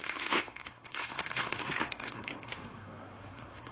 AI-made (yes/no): yes